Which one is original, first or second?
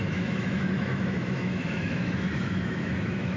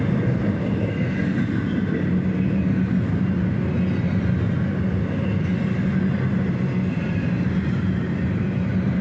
second